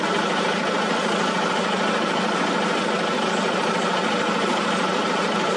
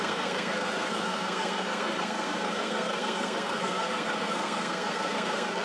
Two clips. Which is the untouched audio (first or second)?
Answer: first